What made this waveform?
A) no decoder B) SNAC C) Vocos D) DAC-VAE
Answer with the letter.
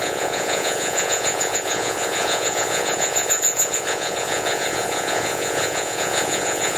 C